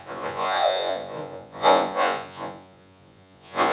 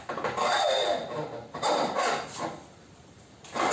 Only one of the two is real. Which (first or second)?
second